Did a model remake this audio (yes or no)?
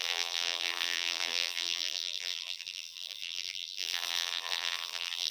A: yes